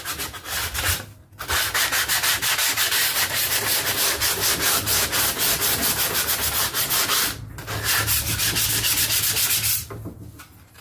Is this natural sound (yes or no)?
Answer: yes